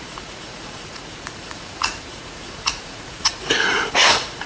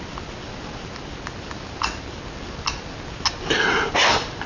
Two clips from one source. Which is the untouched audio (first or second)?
second